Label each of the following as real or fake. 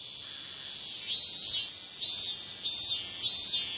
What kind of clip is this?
real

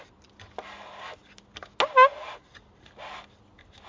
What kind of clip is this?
real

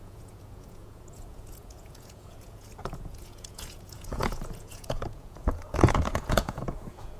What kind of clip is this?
fake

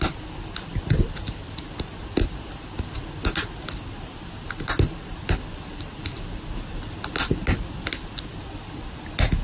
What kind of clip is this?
real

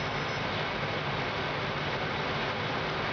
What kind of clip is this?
real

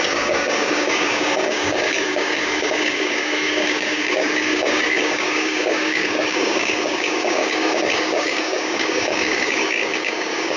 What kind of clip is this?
fake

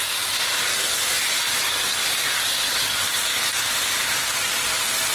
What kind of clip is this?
real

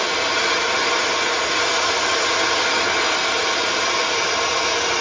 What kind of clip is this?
real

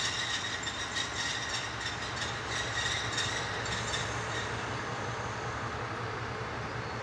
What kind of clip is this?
real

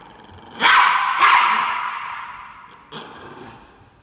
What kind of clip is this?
fake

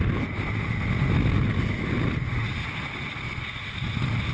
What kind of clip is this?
real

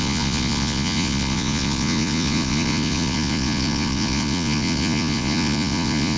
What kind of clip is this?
fake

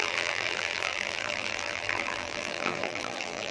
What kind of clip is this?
fake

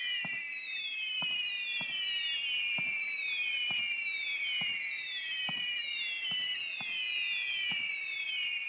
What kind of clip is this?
real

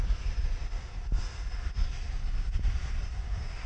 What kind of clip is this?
real